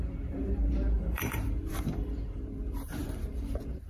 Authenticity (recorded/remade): remade